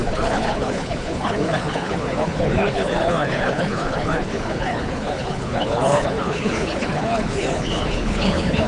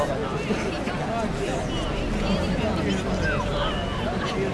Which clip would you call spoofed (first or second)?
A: first